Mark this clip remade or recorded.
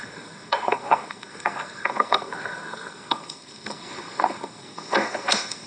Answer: remade